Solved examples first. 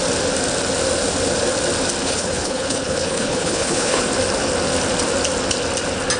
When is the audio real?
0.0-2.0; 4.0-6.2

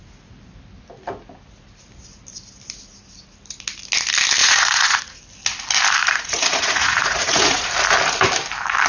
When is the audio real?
0.0-4.4; 5.2-6.0; 7.7-8.9

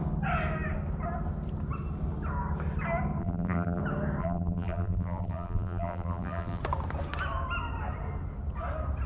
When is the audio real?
0.0-3.2; 3.8-4.2; 6.6-9.1